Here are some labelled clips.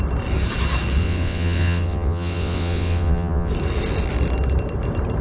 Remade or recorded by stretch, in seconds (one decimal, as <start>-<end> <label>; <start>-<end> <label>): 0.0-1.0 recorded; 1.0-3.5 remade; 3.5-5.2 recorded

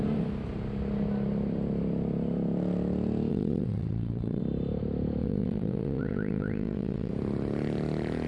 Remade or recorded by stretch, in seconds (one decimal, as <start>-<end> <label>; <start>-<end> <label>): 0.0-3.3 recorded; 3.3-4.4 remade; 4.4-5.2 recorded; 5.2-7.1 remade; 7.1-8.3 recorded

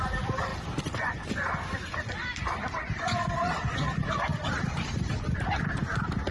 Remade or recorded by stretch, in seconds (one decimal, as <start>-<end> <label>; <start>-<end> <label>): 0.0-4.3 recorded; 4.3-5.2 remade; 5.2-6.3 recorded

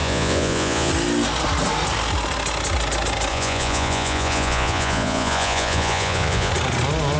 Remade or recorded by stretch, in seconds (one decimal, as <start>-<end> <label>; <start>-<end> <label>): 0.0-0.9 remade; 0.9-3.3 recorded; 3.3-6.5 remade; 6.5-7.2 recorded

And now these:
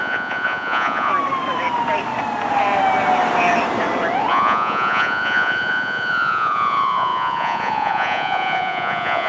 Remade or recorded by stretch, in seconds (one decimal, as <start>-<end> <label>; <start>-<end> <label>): 0.0-1.1 remade; 1.1-4.3 recorded; 4.3-9.3 remade